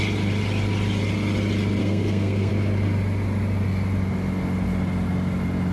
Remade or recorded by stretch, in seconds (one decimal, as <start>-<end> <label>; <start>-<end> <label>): 0.0-1.8 recorded; 1.8-2.5 remade; 2.5-5.7 recorded